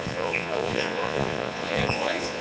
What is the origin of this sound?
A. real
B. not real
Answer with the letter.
B